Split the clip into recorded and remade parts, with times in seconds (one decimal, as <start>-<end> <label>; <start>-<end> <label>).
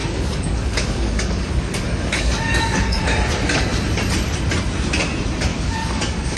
0.0-3.0 remade; 3.0-5.5 recorded; 5.5-6.4 remade